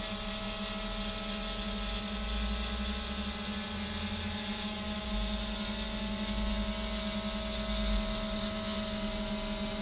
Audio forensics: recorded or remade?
recorded